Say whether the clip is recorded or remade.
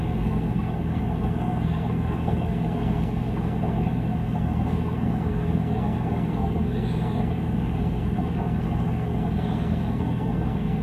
remade